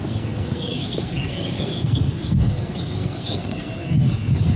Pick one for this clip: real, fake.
fake